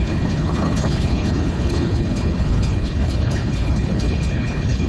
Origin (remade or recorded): remade